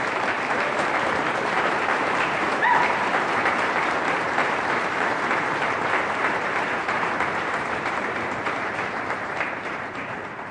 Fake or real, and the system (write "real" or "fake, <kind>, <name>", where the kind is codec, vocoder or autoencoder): fake, vocoder, BigVGAN v2